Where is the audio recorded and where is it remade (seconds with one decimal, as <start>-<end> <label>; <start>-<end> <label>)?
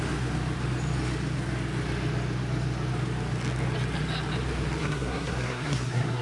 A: 0.0-4.8 recorded; 4.8-6.2 remade